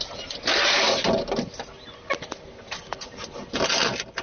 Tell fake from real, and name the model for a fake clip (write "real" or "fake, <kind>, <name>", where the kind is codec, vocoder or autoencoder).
real